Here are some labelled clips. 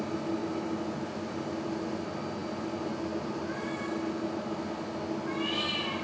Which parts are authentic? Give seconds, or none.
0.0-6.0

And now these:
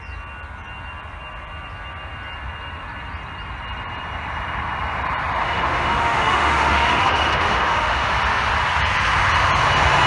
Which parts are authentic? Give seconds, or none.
0.0-5.4; 8.1-10.1

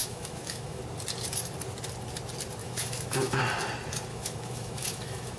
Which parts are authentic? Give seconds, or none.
0.8-2.6; 3.4-4.1

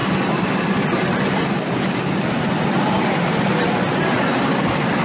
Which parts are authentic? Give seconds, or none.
0.0-5.0

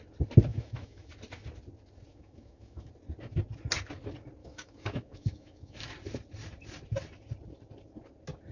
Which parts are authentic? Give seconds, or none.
0.0-0.5; 1.1-2.1; 2.9-4.4; 5.8-8.5